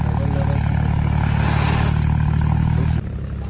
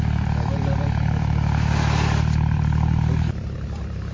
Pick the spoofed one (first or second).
second